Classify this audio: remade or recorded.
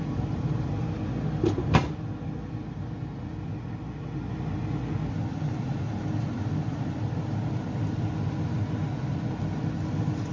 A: recorded